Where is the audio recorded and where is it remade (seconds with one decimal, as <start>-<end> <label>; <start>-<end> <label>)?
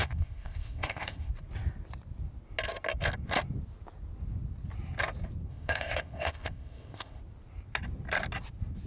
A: 0.0-1.3 remade; 1.3-5.5 recorded; 5.5-7.2 remade; 7.2-8.9 recorded